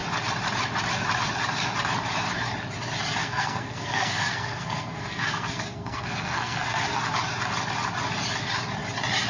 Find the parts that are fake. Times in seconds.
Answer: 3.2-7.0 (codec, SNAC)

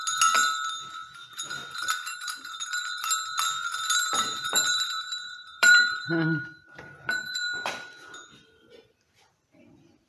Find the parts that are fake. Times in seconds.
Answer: 0.4-1.3 (vocoder, BigVGAN v2); 2.0-2.9; 3.9-7.9

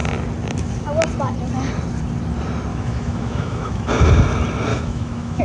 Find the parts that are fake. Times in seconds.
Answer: 2.7-3.9 (autoencoder, DAC-VAE); 4.7-5.4

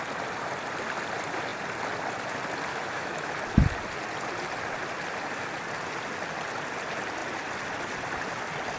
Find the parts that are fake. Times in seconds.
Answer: 2.7-3.3 (autoencoder, DAC-VAE)

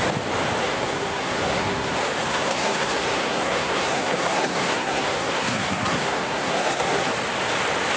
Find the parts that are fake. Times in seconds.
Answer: 0.6-1.9 (codec, SNAC); 2.3-7.1

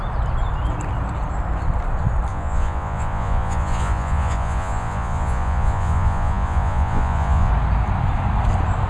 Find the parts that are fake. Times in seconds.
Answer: 2.3-7.5 (vocoder, Vocos)